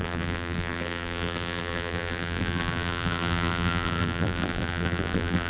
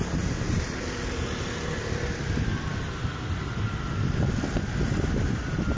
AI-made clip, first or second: first